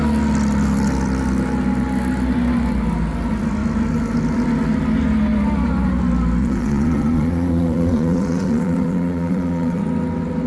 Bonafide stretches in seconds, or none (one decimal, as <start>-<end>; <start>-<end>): 0.0-6.4; 9.8-10.5